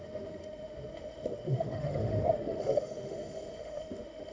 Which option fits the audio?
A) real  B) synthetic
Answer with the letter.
B